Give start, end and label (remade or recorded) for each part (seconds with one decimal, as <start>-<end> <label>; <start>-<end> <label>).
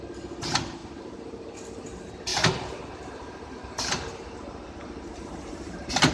0.0-0.8 recorded; 0.8-1.7 remade; 1.7-2.3 recorded; 2.3-6.1 remade